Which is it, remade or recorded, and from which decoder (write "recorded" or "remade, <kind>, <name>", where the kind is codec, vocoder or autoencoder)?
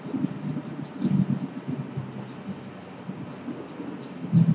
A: recorded